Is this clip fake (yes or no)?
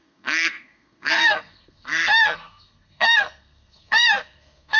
yes